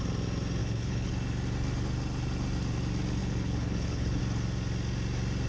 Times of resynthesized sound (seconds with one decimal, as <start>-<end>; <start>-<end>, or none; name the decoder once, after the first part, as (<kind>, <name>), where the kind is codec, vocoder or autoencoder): 0.6-1.1 (codec, HILCodec); 3.2-4.2